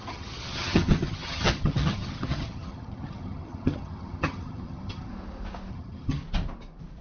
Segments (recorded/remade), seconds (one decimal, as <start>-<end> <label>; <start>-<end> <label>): 0.0-5.1 remade; 5.1-5.7 recorded; 5.7-6.2 remade; 6.2-7.0 recorded